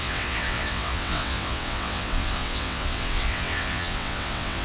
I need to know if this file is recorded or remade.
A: remade